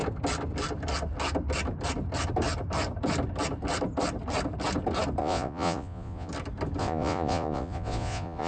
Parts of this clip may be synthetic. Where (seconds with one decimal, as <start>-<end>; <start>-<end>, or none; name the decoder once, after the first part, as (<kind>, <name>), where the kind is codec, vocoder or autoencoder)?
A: 5.2-6.3 (vocoder, Vocos); 6.8-8.5